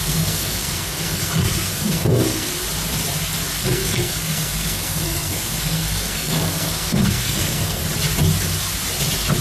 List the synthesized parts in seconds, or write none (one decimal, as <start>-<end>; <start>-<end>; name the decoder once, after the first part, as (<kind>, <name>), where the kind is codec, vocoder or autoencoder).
0.0-2.5 (codec, SNAC); 3.6-7.8